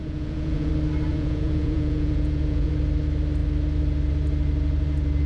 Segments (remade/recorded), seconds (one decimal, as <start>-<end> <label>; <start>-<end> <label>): 0.0-0.7 remade; 0.7-1.1 recorded; 1.1-2.7 remade; 2.7-5.3 recorded